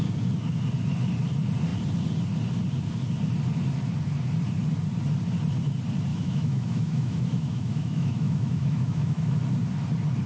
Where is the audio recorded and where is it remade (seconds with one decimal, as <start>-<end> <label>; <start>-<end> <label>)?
0.0-6.1 recorded; 6.1-9.4 remade; 9.4-10.3 recorded